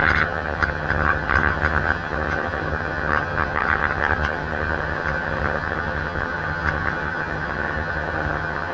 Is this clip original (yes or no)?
no